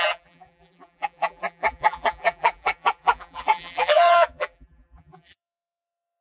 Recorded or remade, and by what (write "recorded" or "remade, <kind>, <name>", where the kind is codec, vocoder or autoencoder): remade, vocoder, BigVGAN v2